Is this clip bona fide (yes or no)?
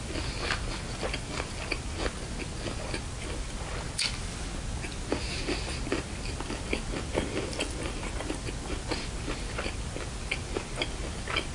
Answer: yes